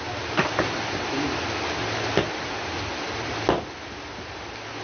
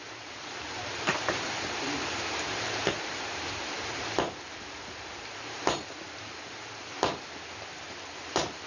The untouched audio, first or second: first